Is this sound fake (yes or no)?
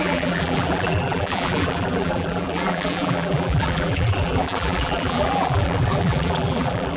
yes